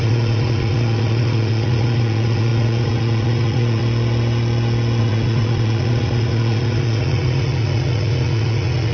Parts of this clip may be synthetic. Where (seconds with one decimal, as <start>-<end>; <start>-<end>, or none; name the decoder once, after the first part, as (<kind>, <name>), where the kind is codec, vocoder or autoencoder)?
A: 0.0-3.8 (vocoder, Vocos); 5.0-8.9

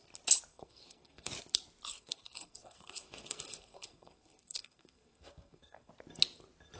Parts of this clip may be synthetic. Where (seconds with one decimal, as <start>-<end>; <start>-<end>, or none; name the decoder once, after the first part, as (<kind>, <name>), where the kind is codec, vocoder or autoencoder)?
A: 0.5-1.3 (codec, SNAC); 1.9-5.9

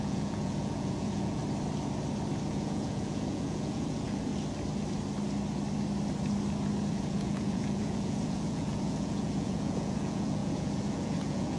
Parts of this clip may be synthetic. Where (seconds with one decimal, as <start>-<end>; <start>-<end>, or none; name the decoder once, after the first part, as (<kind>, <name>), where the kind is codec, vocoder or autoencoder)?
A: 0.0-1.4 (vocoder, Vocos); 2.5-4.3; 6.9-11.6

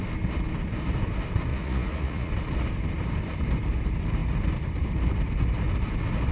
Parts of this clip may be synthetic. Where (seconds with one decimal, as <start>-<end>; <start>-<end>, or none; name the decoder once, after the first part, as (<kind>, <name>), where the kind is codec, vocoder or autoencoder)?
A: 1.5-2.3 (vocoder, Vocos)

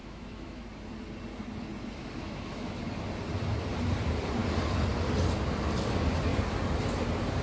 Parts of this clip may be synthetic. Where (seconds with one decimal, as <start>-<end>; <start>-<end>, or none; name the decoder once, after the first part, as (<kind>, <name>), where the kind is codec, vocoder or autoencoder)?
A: 0.0-0.6 (autoencoder, DAC-VAE); 2.0-2.8

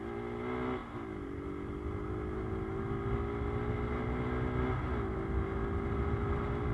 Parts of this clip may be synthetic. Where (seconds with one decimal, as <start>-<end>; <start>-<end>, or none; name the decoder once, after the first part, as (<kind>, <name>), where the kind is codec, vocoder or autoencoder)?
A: none